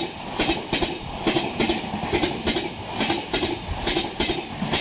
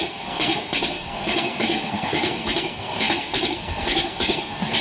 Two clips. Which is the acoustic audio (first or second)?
first